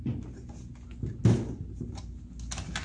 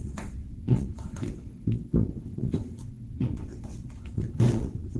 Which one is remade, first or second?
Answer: second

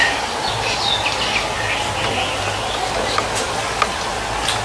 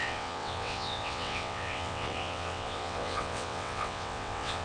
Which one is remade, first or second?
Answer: second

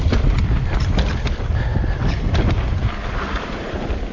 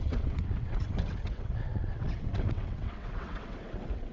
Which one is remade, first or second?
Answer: second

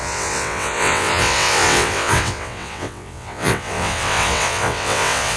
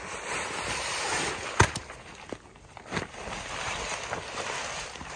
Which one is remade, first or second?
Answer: first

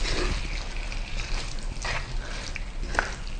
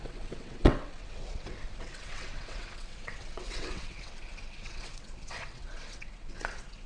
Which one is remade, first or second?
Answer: second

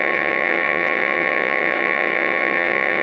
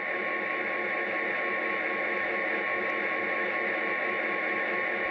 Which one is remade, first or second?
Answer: first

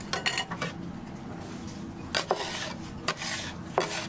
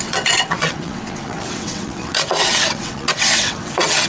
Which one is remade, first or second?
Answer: second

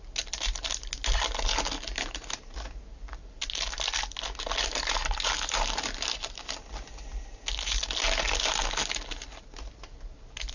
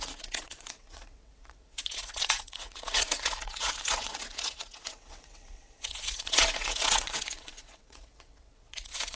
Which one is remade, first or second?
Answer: second